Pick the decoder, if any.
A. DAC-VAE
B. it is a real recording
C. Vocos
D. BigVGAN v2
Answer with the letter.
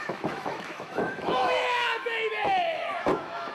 A